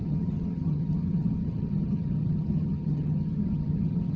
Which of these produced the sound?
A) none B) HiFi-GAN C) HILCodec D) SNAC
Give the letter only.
B